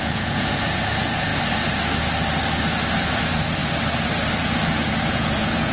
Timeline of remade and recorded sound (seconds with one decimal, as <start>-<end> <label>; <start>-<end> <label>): 0.0-1.3 remade; 1.3-3.1 recorded; 3.1-3.6 remade; 3.6-5.1 recorded; 5.1-5.7 remade